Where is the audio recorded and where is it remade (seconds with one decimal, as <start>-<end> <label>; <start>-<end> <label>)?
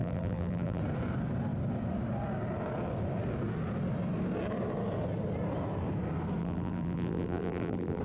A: 0.0-0.8 remade; 0.8-6.4 recorded; 6.4-8.0 remade